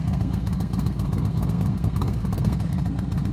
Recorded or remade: remade